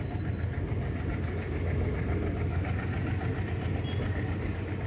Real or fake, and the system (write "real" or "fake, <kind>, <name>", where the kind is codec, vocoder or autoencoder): real